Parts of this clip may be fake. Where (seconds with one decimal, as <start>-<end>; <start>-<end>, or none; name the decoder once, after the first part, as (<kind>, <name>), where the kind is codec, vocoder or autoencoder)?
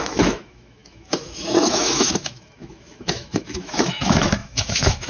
0.0-5.1 (autoencoder, DAC-VAE)